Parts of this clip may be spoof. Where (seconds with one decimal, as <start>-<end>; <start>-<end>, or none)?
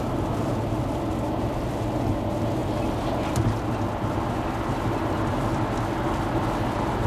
none